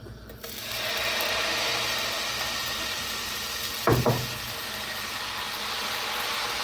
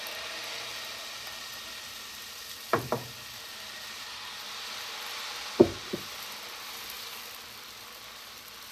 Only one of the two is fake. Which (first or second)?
second